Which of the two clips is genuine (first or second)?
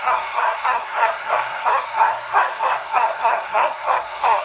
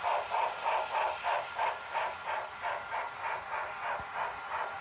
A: second